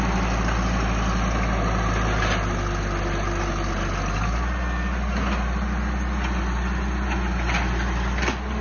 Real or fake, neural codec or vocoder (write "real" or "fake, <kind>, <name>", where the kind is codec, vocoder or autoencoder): real